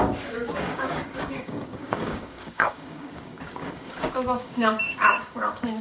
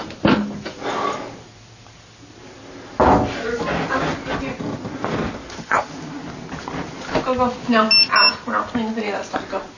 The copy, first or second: first